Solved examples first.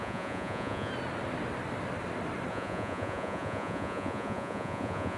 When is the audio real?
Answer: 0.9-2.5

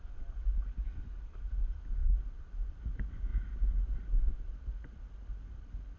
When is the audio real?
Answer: 0.0-6.0

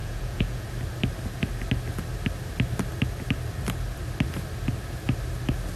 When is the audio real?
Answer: 0.7-5.8